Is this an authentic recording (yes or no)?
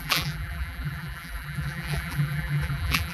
no